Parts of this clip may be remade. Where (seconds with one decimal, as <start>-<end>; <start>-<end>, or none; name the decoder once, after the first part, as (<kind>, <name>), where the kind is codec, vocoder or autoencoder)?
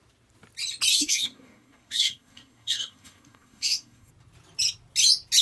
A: 0.9-4.1 (codec, SNAC)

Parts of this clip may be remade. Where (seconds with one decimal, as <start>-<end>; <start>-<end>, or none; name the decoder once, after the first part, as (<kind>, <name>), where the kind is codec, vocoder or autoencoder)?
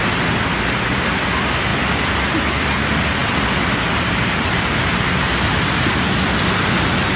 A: none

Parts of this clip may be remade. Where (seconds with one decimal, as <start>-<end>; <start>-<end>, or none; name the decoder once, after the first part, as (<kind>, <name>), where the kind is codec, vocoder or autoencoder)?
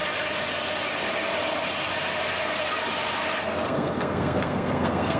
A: 3.5-5.2 (codec, SNAC)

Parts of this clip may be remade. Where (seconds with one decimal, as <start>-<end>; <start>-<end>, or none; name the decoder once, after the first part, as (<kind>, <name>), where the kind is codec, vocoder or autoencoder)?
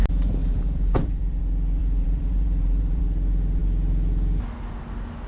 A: 0.4-1.4 (vocoder, BigVGAN v2); 1.8-3.0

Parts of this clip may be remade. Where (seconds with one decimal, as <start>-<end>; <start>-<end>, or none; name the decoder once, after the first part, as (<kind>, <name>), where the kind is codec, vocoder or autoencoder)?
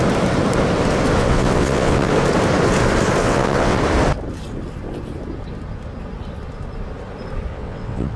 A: 1.2-2.1 (vocoder, WaveNeXt); 3.2-3.8; 7.5-8.2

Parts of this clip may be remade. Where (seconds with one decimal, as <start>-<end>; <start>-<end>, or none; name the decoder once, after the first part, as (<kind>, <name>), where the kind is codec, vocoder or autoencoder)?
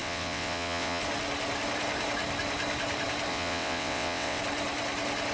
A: 0.0-1.0 (vocoder, WaveNeXt); 3.3-4.4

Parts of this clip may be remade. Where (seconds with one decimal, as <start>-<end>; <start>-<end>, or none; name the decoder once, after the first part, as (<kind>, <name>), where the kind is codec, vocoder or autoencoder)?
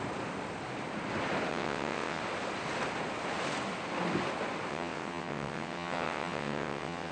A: 1.5-2.2 (vocoder, WaveNeXt); 4.7-7.1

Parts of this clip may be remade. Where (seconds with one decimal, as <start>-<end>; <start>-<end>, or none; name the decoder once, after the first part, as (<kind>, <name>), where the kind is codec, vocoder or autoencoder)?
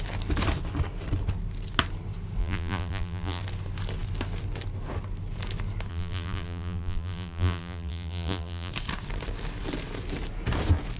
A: 2.4-3.4 (vocoder, BigVGAN v2); 5.9-8.7